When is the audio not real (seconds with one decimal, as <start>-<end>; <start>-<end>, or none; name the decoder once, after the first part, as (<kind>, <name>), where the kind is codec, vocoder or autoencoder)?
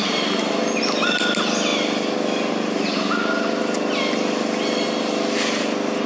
none